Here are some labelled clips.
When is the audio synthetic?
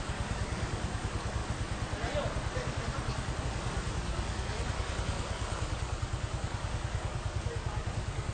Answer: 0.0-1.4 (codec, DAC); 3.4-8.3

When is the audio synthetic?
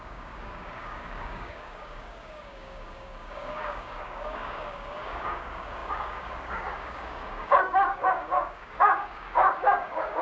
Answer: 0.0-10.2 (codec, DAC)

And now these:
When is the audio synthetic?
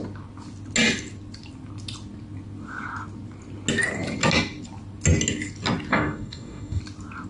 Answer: 5.9-6.8 (codec, DAC)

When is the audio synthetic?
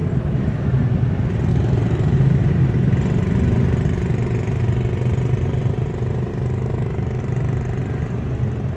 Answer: 1.5-2.5 (codec, DAC); 6.3-7.2